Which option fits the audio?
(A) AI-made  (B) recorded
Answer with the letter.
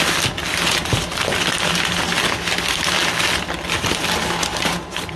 B